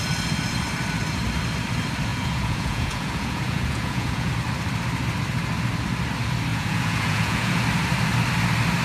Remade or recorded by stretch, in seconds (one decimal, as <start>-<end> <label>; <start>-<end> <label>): 0.0-2.1 recorded; 2.1-4.3 remade; 4.3-6.5 recorded; 6.5-7.6 remade; 7.6-8.8 recorded